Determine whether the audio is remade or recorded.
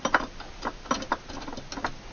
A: recorded